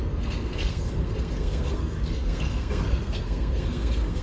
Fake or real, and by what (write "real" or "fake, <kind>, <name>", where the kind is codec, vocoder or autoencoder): fake, codec, SNAC